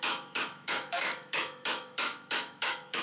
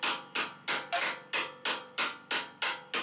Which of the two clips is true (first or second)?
second